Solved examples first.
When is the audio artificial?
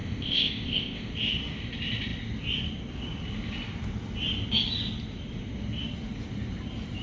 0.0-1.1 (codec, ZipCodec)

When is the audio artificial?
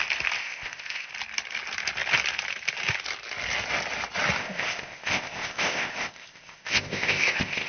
0.4-1.1 (codec, ZipCodec); 4.4-7.7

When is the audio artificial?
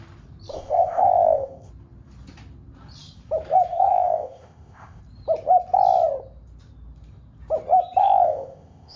0.5-1.7 (codec, ZipCodec); 3.7-5.0; 8.0-9.0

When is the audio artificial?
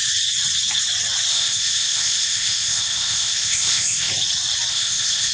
1.3-4.1 (codec, ZipCodec); 4.7-5.3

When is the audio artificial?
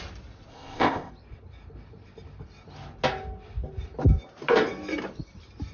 0.5-1.1 (codec, ZipCodec)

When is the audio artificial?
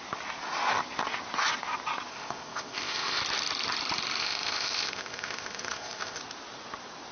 2.1-3.2 (codec, ZipCodec); 4.2-6.2